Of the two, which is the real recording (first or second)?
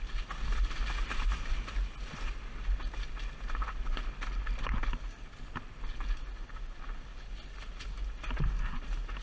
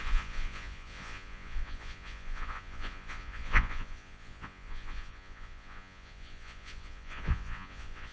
first